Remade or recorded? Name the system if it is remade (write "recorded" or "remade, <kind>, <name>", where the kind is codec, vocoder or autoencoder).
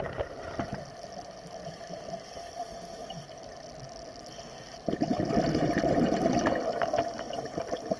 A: recorded